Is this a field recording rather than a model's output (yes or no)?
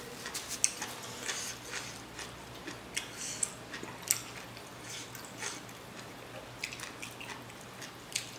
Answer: yes